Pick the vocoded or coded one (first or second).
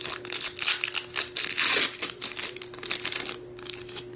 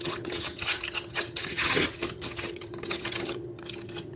second